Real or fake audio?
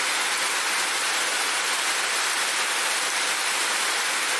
real